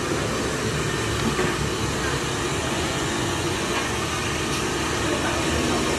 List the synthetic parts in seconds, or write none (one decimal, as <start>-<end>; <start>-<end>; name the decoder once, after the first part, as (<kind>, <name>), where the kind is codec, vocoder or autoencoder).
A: 2.6-4.1 (vocoder, Vocos)